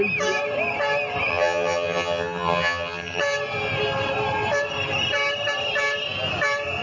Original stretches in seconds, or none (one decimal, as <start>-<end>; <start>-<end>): 0.0-1.3; 3.2-6.8

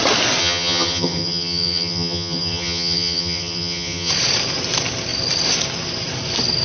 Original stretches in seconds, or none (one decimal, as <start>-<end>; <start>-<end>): 0.0-0.4; 4.1-6.6

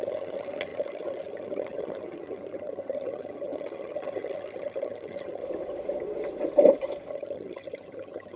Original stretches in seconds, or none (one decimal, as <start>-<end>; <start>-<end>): 5.4-7.1

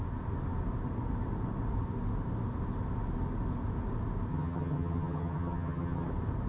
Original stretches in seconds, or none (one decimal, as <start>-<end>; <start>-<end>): 0.0-4.3; 6.1-6.5

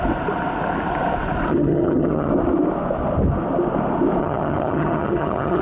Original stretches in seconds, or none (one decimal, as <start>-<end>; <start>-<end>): 0.0-1.5; 2.3-4.2

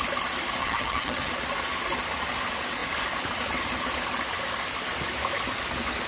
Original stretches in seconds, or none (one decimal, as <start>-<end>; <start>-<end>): 0.0-0.6; 1.3-6.1

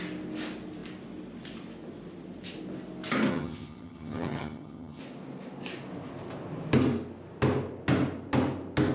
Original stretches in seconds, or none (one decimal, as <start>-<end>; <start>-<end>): 0.0-3.3; 5.0-8.9